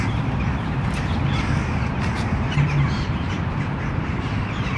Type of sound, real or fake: fake